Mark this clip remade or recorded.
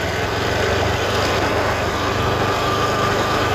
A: recorded